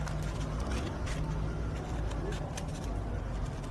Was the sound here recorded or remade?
recorded